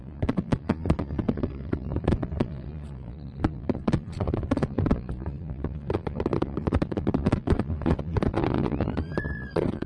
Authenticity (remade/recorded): remade